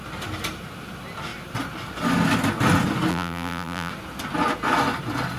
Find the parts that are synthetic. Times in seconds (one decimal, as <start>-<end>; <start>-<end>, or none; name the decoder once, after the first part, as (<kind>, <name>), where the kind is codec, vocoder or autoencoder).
3.1-3.9 (vocoder, BigVGAN v2)